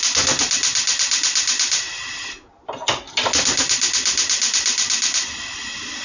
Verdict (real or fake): real